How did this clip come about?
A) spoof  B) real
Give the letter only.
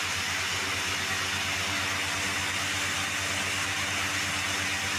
B